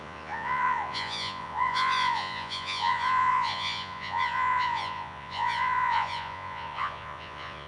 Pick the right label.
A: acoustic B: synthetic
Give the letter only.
B